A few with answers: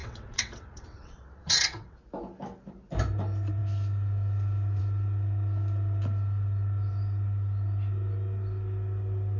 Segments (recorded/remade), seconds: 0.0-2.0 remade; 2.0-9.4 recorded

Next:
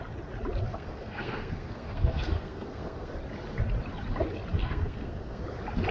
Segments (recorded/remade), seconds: 0.0-0.7 recorded; 0.7-3.1 remade; 3.1-4.6 recorded; 4.6-5.4 remade; 5.4-5.9 recorded

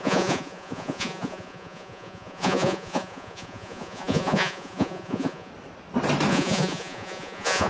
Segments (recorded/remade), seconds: 0.0-5.5 remade; 5.5-6.3 recorded; 6.3-7.7 remade

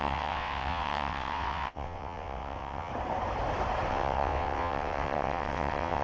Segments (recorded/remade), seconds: 0.0-2.9 remade; 2.9-3.9 recorded; 3.9-6.0 remade

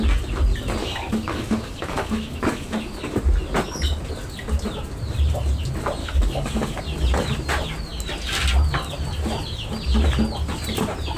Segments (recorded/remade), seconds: 0.0-0.8 recorded; 0.8-3.2 remade; 3.2-6.0 recorded; 6.0-6.8 remade; 6.8-11.2 recorded

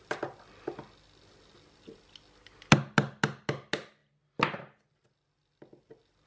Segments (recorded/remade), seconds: 0.0-6.3 recorded

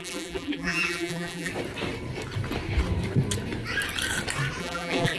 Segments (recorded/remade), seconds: 0.0-1.5 remade; 1.5-4.6 recorded; 4.6-5.2 remade

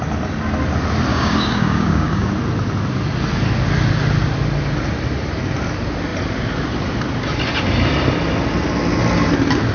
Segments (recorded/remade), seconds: 0.0-1.1 recorded; 1.1-2.3 remade; 2.3-9.7 recorded